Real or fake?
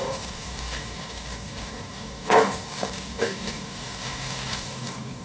fake